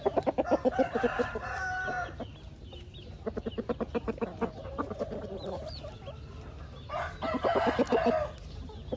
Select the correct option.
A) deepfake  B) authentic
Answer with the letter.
B